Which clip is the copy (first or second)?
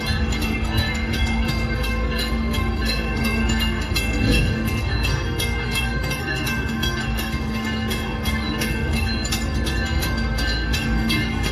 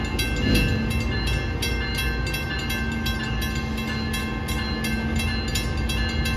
first